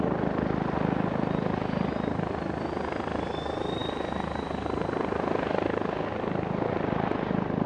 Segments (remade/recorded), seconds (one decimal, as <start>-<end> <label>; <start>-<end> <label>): 0.0-7.7 recorded